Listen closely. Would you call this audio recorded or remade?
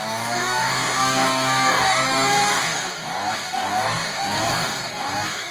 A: remade